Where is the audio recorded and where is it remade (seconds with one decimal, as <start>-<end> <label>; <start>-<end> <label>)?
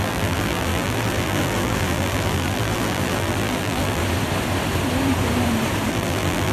0.0-4.0 remade; 4.0-5.9 recorded; 5.9-6.5 remade